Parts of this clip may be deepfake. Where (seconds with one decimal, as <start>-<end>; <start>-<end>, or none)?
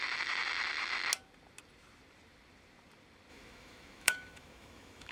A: 3.3-5.1